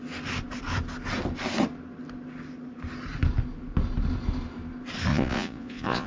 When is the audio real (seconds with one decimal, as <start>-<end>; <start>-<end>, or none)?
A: 0.0-5.1